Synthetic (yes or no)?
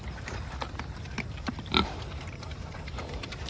yes